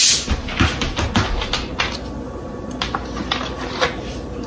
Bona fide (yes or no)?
yes